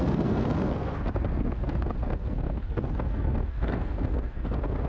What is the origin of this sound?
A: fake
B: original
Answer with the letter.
A